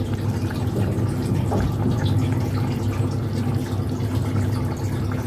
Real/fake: real